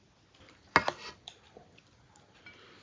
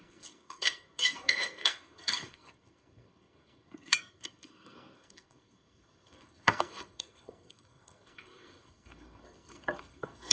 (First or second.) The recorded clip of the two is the first